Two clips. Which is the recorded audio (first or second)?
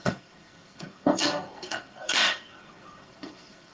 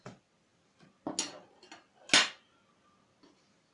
second